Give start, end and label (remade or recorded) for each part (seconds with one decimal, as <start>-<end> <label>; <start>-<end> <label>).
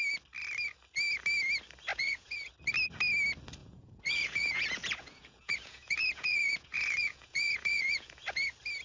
0.0-1.9 recorded; 1.9-2.5 remade; 2.5-3.6 recorded; 3.6-8.4 remade; 8.4-8.8 recorded